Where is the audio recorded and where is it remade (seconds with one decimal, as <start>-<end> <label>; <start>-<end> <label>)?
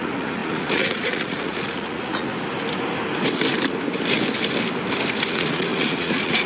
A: 0.0-2.3 remade; 2.3-5.3 recorded; 5.3-6.5 remade